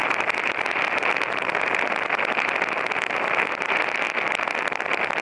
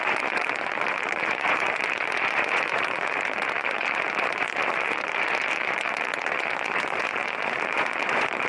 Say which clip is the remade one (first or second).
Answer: second